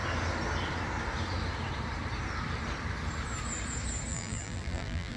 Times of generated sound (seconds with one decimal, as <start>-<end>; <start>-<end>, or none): 4.1-5.2